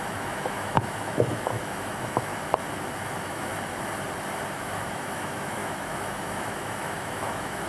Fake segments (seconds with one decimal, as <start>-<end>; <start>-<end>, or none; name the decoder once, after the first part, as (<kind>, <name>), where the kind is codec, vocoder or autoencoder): 0.0-2.3 (autoencoder, DAC-VAE); 3.0-3.5; 4.5-7.7